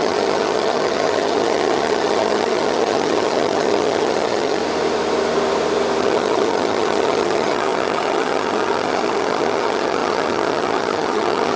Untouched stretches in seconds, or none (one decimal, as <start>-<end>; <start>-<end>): 4.6-6.0